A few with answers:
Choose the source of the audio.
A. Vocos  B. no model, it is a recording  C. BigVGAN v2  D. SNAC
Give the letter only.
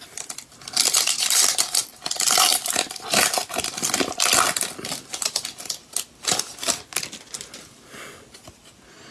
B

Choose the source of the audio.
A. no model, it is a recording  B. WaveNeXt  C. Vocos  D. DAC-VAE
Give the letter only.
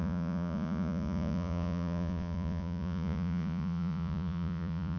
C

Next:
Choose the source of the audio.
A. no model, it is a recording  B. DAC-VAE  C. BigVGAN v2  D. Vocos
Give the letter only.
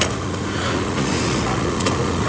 D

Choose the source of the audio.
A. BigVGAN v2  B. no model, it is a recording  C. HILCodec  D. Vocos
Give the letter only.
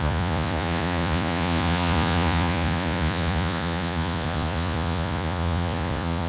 D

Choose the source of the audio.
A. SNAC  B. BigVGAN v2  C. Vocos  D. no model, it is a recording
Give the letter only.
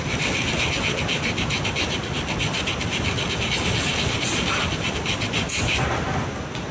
D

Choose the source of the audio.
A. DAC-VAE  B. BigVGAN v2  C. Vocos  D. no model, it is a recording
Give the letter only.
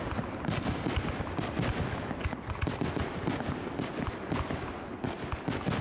D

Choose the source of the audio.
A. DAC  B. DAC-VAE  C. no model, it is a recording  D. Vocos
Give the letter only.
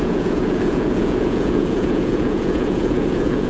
D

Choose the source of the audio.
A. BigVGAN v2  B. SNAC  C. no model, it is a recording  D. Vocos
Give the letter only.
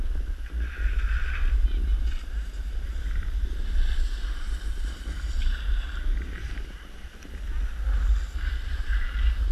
C